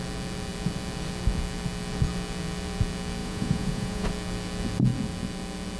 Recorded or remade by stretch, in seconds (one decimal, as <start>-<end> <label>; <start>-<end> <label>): 0.0-3.2 recorded; 3.2-4.1 remade; 4.1-5.8 recorded